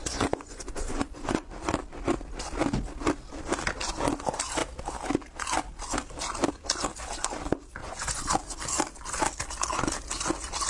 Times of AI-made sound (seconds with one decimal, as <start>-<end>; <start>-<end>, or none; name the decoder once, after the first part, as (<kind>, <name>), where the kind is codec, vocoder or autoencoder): 0.0-1.5 (vocoder, Vocos); 7.8-8.3